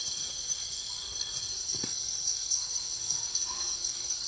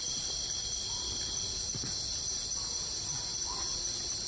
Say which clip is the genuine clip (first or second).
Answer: second